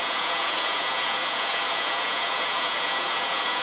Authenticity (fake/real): fake